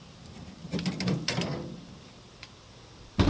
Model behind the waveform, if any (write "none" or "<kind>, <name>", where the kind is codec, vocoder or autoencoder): none